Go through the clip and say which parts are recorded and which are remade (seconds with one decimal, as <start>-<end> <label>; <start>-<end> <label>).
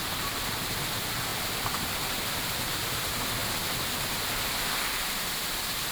0.0-1.3 recorded; 1.3-2.9 remade; 2.9-5.9 recorded